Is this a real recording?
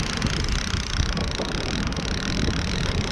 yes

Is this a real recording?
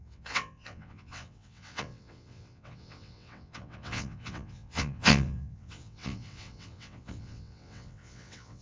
no